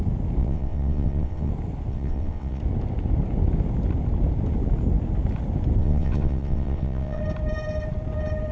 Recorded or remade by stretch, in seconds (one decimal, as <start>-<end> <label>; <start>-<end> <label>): 0.0-0.4 recorded; 0.4-1.5 remade; 1.5-1.9 recorded; 1.9-2.6 remade; 2.6-5.8 recorded; 5.8-7.2 remade; 7.2-8.5 recorded